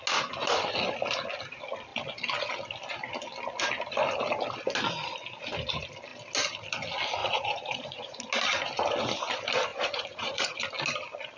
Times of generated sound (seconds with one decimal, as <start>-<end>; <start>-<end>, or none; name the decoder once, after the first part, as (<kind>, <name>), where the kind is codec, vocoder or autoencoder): 7.2-8.2 (vocoder, Vocos); 9.7-10.6